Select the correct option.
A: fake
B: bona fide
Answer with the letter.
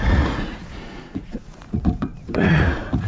A